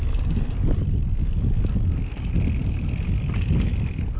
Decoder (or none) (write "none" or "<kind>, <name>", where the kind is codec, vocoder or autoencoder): none